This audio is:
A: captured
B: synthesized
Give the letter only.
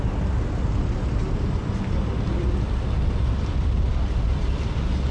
A